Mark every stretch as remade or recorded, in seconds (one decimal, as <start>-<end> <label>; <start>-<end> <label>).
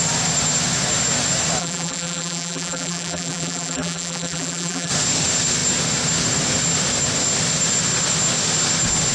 0.0-1.6 recorded; 1.6-4.9 remade; 4.9-9.1 recorded